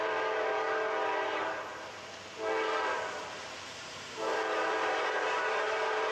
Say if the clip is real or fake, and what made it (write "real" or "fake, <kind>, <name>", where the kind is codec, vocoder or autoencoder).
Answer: fake, vocoder, BigVGAN v2